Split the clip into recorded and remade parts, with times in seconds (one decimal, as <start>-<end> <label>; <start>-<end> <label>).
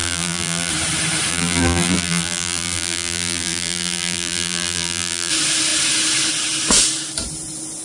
0.0-0.7 remade; 0.7-1.3 recorded; 1.3-5.3 remade; 5.3-7.8 recorded